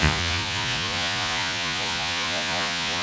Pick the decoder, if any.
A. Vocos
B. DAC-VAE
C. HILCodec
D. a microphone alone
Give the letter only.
A